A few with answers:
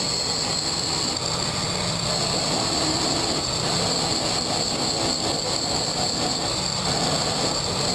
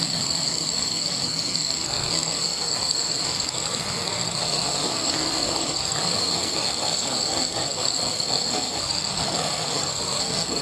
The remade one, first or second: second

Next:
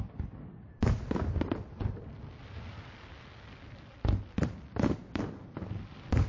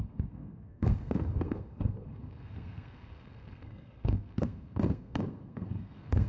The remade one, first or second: second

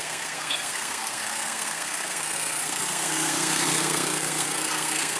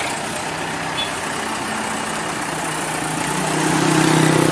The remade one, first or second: first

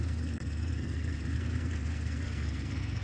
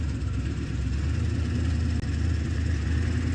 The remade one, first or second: first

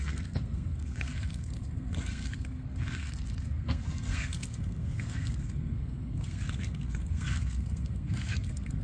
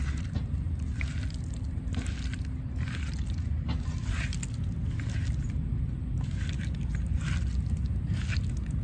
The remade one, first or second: first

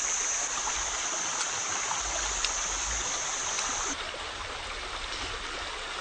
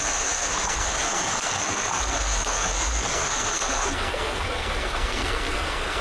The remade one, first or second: second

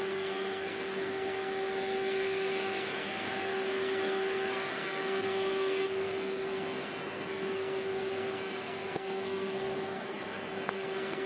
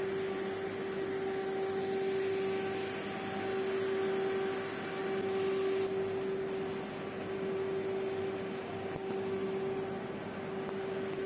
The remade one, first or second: first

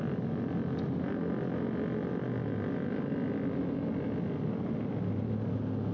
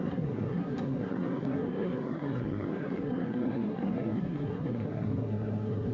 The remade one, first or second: second